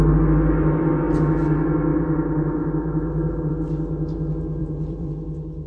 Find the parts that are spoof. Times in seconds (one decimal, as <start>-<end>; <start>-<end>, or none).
1.9-3.5; 4.6-5.1